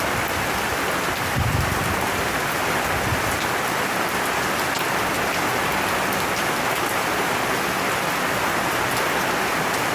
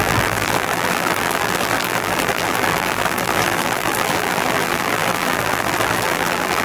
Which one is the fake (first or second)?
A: second